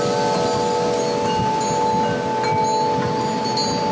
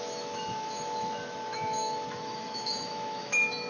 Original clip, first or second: first